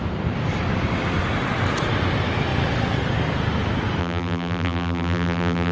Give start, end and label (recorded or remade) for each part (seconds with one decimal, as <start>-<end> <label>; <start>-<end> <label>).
0.0-4.0 recorded; 4.0-5.7 remade